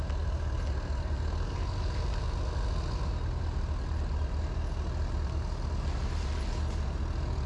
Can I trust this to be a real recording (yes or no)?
yes